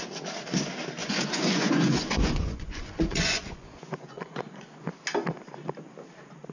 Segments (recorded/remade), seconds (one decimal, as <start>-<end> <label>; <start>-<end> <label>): 0.0-1.0 recorded; 1.0-4.9 remade; 4.9-6.5 recorded